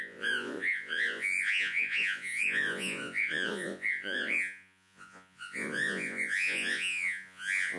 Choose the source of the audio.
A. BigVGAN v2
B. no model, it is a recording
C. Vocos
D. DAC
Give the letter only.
C